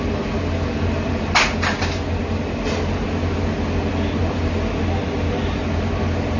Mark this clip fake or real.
real